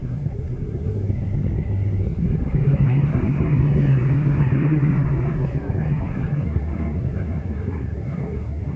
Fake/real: fake